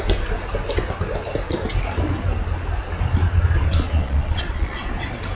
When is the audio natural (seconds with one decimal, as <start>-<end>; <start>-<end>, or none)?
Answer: 0.0-3.7; 4.8-5.3